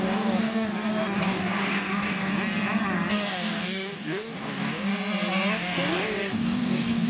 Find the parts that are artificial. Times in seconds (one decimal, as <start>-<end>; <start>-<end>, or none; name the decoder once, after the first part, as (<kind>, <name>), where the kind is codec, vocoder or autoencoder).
0.0-0.7 (codec, DAC); 1.2-2.3; 3.1-4.9; 5.5-7.1